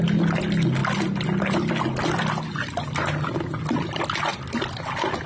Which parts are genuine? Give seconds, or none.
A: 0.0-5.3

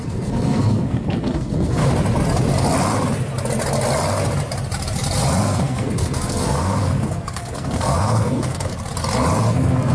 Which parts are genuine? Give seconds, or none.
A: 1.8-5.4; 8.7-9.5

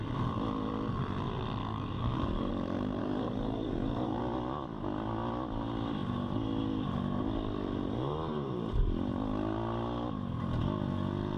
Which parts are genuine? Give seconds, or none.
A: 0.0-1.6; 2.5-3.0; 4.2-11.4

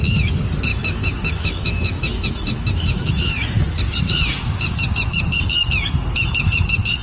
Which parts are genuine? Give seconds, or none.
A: 0.0-0.7; 3.1-7.0